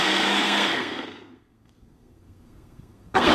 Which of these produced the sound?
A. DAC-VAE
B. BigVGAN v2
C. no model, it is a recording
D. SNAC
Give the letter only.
D